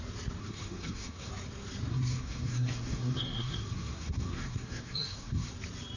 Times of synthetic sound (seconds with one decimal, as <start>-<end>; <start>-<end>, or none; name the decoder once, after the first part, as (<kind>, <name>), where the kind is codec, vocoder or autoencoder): 0.4-1.3 (codec, SNAC); 1.9-5.5